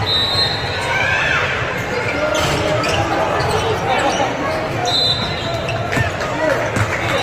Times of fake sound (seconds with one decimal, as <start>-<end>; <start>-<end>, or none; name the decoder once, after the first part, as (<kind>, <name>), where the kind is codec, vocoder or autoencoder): none